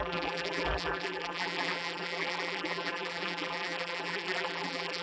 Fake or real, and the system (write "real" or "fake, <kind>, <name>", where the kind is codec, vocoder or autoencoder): fake, vocoder, BigVGAN v2